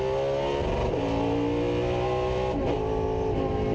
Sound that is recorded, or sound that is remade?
recorded